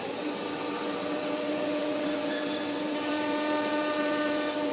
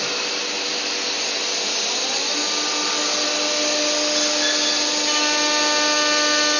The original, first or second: second